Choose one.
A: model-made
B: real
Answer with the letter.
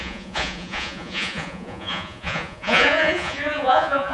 A